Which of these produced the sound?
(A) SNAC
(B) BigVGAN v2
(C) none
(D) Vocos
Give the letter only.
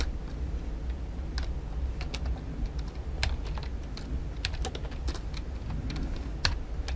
C